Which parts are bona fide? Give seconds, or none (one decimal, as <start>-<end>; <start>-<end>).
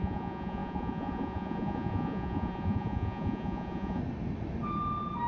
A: 4.0-5.3